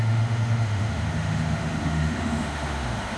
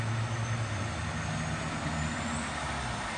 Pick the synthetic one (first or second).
first